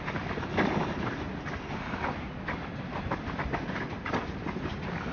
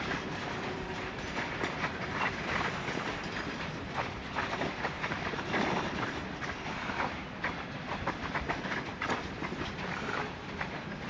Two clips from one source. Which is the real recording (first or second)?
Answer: first